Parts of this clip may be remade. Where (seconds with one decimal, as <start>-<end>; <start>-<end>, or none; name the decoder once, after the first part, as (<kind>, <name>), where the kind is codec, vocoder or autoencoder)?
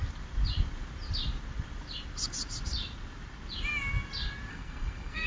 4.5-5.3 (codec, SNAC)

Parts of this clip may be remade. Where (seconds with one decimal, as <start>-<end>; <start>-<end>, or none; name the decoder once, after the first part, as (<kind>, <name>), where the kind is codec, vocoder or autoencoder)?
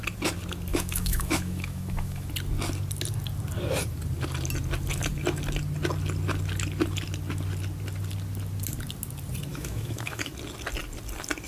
0.7-2.3 (autoencoder, DAC-VAE); 9.5-10.3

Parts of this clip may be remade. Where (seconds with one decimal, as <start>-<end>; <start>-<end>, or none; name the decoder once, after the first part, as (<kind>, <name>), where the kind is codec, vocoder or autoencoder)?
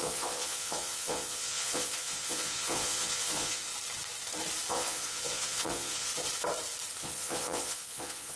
0.0-3.7 (vocoder, Vocos); 4.7-6.1; 7.0-8.4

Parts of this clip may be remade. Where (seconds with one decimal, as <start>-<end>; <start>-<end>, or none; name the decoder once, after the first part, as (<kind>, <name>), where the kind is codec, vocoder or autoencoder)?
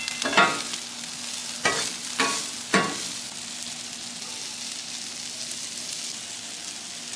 none